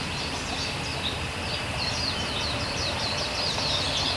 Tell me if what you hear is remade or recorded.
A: recorded